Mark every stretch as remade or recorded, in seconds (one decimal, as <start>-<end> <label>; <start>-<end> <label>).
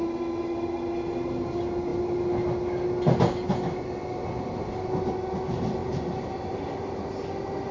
0.0-7.7 recorded